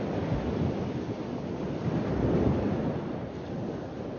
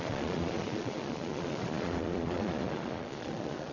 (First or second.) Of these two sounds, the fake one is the second